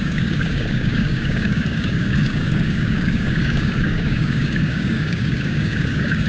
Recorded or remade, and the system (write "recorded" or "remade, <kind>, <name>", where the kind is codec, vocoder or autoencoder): remade, codec, DAC